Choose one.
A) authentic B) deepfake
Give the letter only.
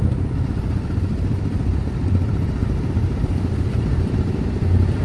B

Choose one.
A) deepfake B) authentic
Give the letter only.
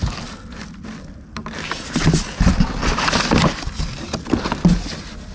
B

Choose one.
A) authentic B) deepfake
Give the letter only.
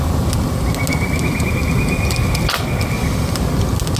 A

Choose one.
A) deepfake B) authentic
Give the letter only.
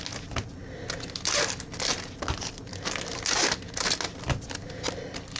B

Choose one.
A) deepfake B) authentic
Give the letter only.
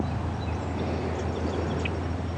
B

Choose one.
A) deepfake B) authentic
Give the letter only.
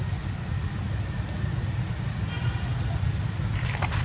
B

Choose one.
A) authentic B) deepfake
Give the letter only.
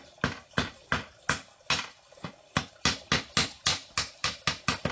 A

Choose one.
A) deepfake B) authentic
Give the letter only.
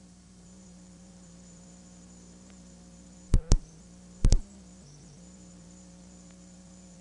A